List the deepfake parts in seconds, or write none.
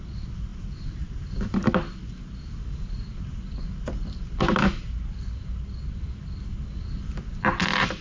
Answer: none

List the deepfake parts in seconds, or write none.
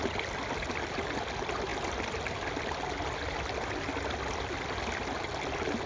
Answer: none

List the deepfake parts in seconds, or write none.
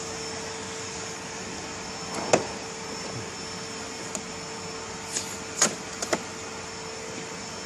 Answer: 0.6-1.4 (codec, DAC)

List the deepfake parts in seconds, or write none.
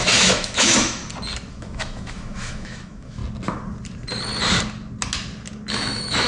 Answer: 0.0-1.0 (autoencoder, DAC-VAE); 1.5-3.2; 5.7-6.3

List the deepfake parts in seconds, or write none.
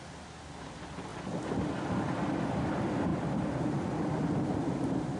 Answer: none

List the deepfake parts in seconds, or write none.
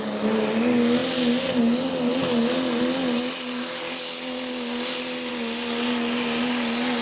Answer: none